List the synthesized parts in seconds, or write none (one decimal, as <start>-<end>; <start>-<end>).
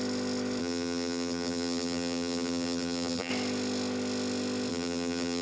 0.6-3.3; 4.7-5.4